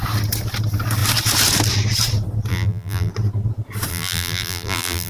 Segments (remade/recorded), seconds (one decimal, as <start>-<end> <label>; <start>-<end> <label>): 0.0-2.5 recorded; 2.5-3.1 remade; 3.1-3.9 recorded; 3.9-5.1 remade